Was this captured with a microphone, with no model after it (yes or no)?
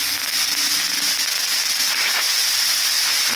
yes